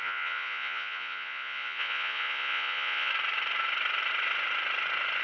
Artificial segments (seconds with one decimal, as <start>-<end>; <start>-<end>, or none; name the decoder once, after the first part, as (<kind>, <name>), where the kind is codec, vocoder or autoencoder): 0.0-3.1 (vocoder, Vocos)

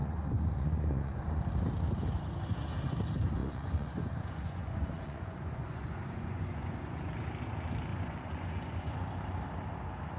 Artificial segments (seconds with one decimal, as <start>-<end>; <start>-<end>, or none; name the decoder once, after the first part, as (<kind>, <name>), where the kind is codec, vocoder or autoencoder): 0.0-1.4 (vocoder, Vocos); 3.4-7.1; 7.9-8.9

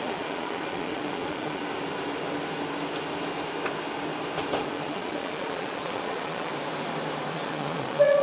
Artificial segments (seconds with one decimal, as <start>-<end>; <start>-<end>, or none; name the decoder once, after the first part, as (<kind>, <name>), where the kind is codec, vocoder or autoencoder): 0.0-1.6 (vocoder, Vocos); 4.6-6.5; 7.3-8.2

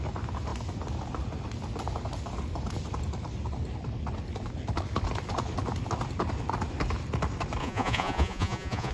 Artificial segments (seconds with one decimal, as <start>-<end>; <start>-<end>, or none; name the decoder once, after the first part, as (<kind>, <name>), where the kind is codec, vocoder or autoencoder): 7.6-8.9 (vocoder, Vocos)